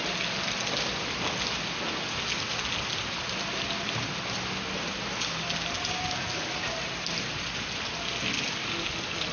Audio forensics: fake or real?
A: real